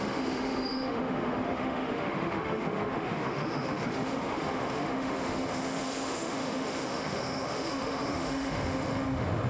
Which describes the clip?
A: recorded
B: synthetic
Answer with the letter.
B